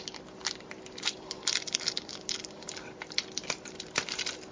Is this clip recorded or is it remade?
recorded